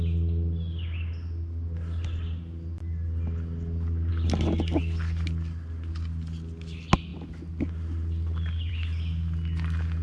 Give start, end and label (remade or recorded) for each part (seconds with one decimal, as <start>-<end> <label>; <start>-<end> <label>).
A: 0.0-10.0 recorded